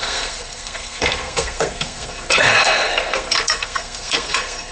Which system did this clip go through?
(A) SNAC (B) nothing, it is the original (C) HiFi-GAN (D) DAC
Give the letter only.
A